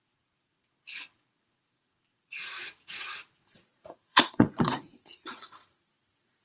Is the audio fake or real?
fake